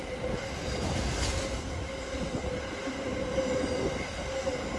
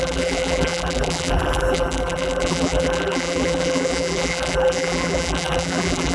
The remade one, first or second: second